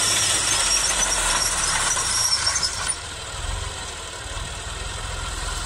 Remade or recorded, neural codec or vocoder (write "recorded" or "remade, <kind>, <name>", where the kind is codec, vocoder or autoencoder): remade, vocoder, BigVGAN v2